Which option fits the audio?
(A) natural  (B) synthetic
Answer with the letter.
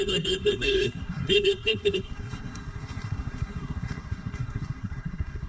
B